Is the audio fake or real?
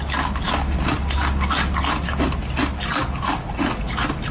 real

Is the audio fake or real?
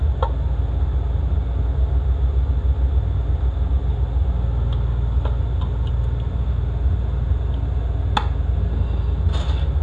real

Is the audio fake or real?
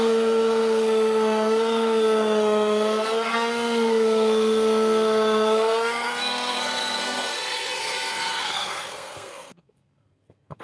fake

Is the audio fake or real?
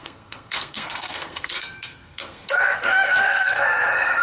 fake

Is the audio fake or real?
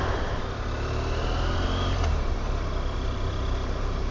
real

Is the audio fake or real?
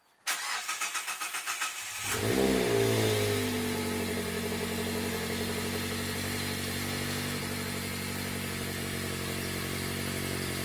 real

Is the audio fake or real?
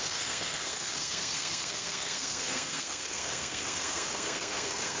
fake